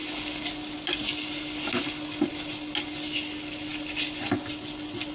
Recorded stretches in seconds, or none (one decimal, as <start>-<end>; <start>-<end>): 0.0-5.1